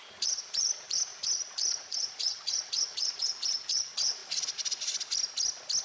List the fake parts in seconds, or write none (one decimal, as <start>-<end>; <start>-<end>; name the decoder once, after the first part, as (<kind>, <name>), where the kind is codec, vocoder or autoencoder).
0.0-4.2 (vocoder, Vocos)

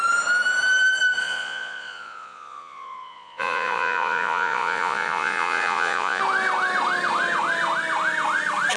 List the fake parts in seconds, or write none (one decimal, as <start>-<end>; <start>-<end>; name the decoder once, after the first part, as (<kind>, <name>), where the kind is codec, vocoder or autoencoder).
1.2-6.2 (vocoder, Vocos)

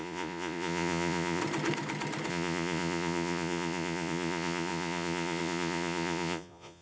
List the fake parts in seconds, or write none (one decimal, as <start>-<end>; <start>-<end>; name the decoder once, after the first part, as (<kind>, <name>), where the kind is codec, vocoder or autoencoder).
0.0-1.4 (vocoder, Vocos); 2.3-6.8

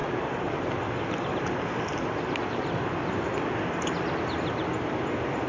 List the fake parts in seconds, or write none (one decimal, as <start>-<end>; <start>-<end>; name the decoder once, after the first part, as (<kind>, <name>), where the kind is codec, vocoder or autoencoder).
none

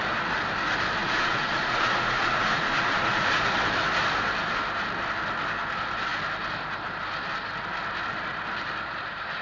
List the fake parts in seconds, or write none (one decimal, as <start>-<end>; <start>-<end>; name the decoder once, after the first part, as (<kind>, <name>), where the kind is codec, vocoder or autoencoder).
1.0-3.4 (vocoder, Vocos)

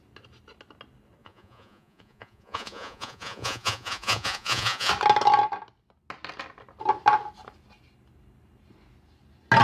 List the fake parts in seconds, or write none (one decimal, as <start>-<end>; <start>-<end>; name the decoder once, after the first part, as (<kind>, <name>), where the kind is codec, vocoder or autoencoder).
1.2-4.9 (vocoder, Vocos)

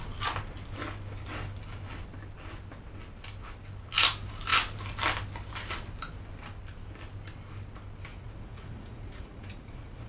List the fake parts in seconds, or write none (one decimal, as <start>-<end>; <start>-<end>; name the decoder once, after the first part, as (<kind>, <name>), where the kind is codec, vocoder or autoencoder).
8.1-10.1 (vocoder, Vocos)

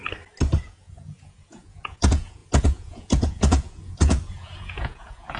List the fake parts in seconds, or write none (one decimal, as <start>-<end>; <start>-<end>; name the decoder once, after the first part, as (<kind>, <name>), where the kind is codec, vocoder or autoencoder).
0.6-5.4 (vocoder, Vocos)